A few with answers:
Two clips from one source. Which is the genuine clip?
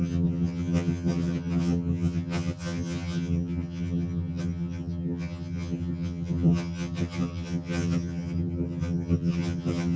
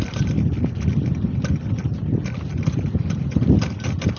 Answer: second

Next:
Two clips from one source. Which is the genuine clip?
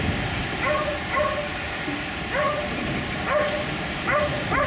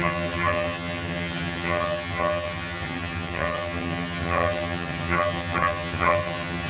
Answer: first